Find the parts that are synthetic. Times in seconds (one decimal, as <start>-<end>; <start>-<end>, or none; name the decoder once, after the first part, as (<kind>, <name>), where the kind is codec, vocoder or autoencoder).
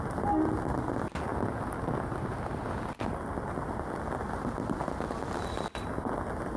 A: 1.3-5.3 (vocoder, BigVGAN v2)